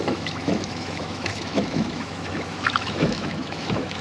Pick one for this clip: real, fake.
fake